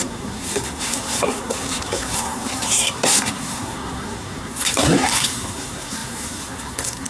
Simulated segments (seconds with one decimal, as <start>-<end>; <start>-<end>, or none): 0.0-7.1